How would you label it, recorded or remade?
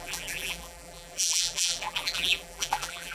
remade